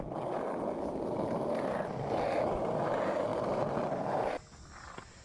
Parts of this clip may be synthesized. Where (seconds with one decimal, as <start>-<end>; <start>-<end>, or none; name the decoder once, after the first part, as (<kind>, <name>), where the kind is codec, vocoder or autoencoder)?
none